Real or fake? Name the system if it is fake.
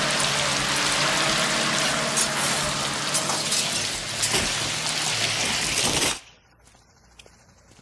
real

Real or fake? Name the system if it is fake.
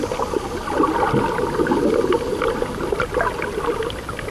real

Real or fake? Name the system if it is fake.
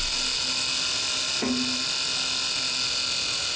real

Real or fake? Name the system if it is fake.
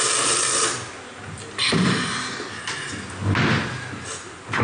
real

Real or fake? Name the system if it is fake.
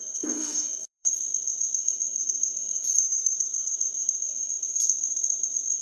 fake, codec, SNAC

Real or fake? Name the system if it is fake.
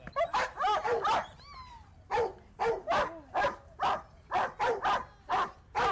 real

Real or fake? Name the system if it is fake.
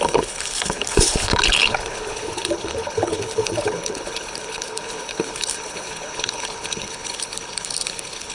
fake, codec, HILCodec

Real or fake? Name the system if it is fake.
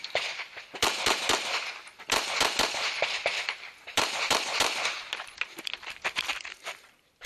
fake, vocoder, BigVGAN v2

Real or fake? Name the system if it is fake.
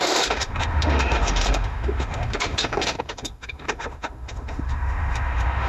fake, autoencoder, DAC-VAE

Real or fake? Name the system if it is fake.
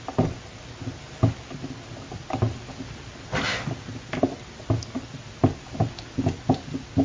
real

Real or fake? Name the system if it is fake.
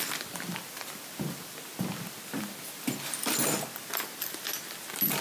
real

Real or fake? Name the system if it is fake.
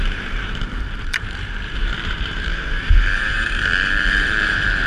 fake, vocoder, BigVGAN v2